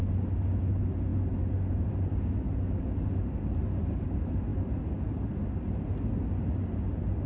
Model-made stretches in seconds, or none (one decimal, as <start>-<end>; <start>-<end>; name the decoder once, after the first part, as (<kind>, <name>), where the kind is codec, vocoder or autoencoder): none